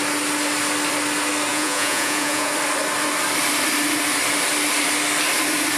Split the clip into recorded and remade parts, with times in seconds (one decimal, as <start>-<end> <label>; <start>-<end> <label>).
0.0-1.5 recorded; 1.5-2.5 remade; 2.5-5.8 recorded